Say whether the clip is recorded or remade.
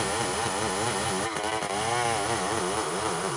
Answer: recorded